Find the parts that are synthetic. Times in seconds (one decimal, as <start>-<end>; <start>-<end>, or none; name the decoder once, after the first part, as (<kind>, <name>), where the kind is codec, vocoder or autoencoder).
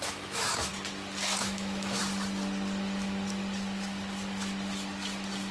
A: 0.0-0.7 (autoencoder, DAC-VAE); 1.4-2.0